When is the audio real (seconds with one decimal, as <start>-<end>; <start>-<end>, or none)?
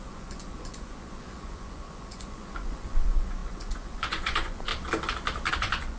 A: 4.7-5.5